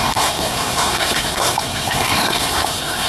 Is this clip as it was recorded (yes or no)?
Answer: no